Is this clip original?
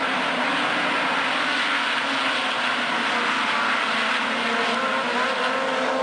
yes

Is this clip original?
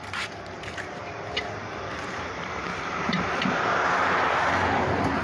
no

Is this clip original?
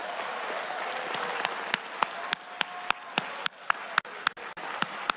yes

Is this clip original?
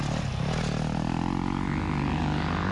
yes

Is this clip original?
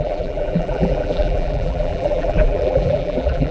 no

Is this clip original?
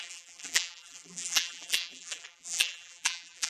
no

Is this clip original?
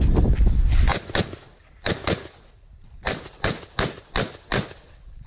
yes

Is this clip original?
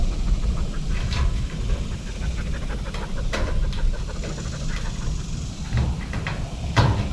yes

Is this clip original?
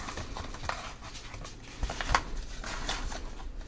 yes